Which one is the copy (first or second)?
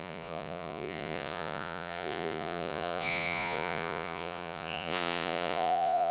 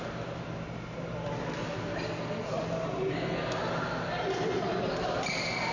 first